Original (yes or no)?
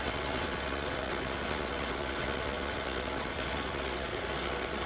no